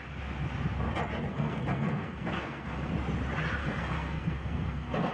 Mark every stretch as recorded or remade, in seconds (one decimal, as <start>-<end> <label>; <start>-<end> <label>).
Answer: 0.0-1.3 recorded; 1.3-2.9 remade; 2.9-3.6 recorded; 3.6-5.1 remade